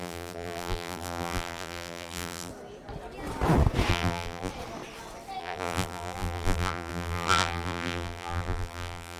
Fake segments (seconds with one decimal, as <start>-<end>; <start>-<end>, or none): 0.0-2.5; 3.9-4.5; 5.4-9.2